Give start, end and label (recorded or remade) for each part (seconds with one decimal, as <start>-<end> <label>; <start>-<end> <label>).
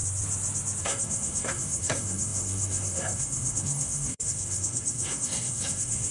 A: 0.0-0.8 recorded; 0.8-6.1 remade